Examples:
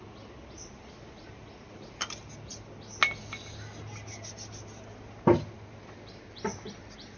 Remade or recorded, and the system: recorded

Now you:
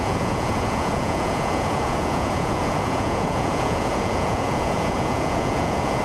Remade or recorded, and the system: remade, vocoder, Vocos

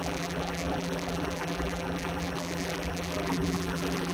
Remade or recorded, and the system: remade, vocoder, BigVGAN v2